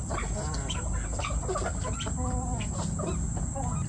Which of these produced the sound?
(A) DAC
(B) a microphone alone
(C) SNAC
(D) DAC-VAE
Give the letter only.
B